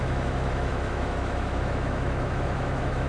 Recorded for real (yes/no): no